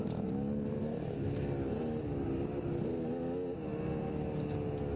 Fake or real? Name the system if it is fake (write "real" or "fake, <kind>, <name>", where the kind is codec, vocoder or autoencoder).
real